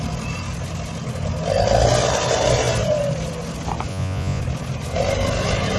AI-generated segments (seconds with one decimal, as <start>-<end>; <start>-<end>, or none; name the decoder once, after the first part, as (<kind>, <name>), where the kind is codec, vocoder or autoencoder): 3.9-4.4 (vocoder, Vocos)